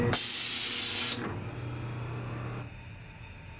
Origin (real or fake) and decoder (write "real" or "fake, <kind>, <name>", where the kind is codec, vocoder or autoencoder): real